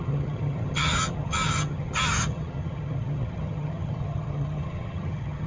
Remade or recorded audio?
remade